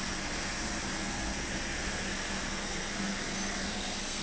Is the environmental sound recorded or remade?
remade